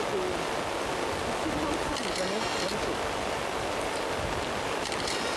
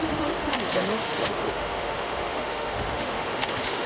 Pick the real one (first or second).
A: first